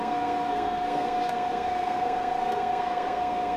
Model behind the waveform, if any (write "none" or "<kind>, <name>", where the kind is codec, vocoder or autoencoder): codec, SNAC